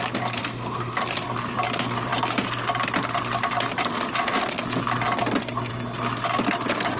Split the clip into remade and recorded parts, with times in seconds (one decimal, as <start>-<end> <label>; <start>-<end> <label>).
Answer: 0.0-0.4 recorded; 0.4-1.0 remade; 1.0-7.0 recorded